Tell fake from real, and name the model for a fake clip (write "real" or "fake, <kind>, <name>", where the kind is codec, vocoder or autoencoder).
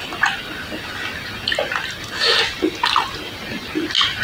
real